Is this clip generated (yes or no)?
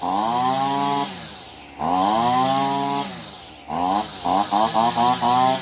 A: no